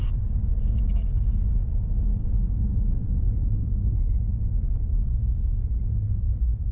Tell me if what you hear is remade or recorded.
recorded